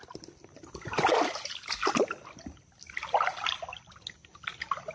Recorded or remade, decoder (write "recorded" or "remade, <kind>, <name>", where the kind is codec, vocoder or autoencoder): recorded